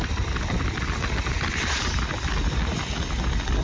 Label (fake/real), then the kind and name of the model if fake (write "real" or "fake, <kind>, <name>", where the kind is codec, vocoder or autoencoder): real